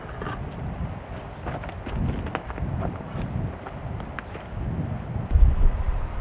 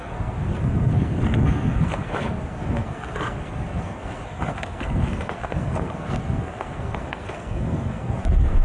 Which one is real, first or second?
first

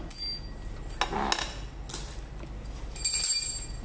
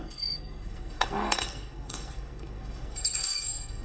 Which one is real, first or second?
first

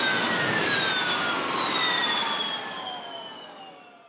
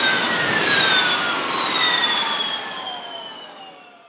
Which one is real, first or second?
first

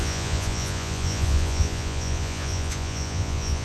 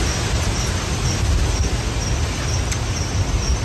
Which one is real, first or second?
second